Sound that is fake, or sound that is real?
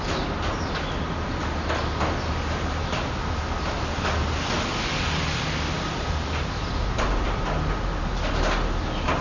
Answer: real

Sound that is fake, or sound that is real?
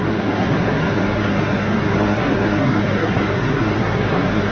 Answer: fake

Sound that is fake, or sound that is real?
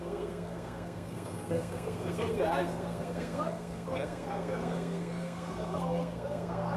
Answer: fake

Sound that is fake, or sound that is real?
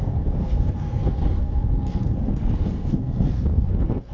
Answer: fake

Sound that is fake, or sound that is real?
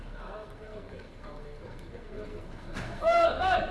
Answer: fake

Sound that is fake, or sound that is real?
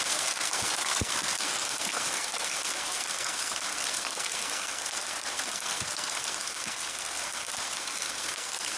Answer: fake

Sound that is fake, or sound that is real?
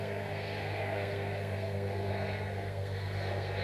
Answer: fake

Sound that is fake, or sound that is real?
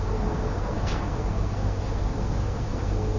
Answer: fake